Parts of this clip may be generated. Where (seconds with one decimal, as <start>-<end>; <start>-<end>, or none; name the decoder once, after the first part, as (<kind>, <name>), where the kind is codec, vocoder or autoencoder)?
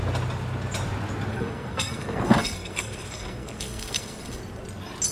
1.3-4.4 (codec, SNAC)